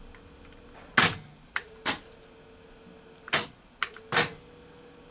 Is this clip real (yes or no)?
yes